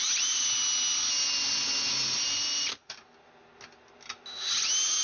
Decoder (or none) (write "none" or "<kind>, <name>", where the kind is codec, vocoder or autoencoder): none